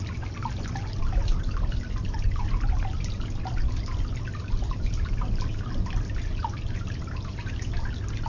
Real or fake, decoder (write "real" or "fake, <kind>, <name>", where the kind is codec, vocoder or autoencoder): real